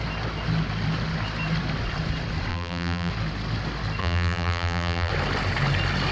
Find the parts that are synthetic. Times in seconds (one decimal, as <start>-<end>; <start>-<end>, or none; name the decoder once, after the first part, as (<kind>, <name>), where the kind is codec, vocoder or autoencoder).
2.5-3.1 (vocoder, BigVGAN v2); 4.0-5.1